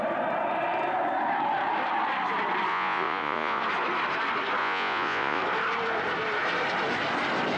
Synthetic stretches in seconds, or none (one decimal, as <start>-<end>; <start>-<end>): 2.7-3.6; 4.6-5.4